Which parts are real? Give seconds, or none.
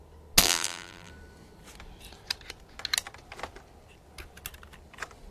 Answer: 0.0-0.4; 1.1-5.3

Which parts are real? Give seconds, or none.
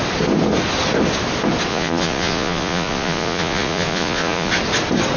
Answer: 0.0-1.7; 4.5-5.2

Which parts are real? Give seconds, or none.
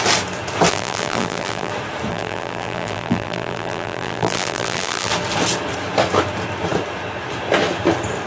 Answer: 0.0-0.7; 1.7-2.1; 5.1-8.3